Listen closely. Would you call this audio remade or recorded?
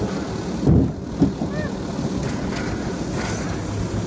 recorded